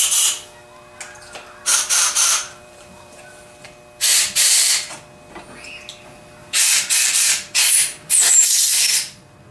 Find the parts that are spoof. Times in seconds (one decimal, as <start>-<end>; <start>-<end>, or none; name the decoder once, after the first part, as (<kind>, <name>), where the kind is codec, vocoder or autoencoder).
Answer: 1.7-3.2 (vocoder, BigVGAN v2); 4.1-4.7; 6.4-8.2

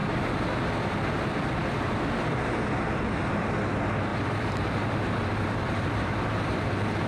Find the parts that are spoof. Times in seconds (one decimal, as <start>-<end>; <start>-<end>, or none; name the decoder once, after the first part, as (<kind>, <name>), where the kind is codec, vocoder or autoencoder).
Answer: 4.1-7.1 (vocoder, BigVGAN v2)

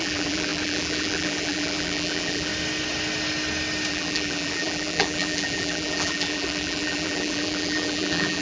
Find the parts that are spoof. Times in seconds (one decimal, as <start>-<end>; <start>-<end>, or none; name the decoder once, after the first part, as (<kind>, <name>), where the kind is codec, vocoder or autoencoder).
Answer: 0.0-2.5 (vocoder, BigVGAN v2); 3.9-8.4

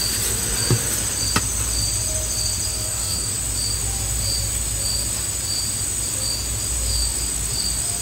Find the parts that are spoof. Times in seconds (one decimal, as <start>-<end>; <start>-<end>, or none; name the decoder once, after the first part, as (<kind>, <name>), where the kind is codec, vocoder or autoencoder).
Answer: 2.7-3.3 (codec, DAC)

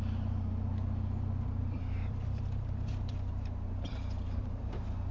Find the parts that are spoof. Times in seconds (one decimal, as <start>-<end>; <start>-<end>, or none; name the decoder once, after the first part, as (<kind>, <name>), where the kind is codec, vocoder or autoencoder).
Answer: 1.6-5.1 (vocoder, BigVGAN v2)

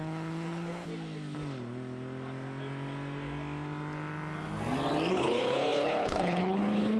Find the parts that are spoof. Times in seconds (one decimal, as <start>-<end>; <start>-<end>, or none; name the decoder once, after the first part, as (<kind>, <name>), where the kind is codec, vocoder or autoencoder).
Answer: 0.0-0.9 (codec, HILCodec); 5.1-7.0

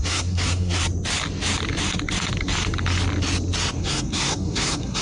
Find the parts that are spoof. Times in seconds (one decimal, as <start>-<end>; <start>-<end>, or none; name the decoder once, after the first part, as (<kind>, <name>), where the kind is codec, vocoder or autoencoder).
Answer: 0.0-0.8 (codec, SNAC); 3.8-5.0